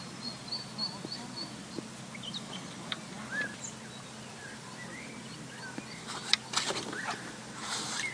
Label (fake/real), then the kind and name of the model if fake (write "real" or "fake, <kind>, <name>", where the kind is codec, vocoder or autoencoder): real